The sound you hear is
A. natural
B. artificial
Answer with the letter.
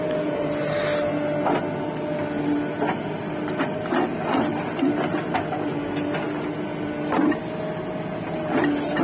A